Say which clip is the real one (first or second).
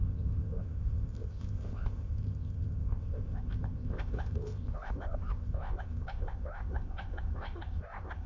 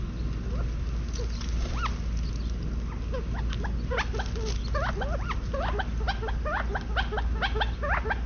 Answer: second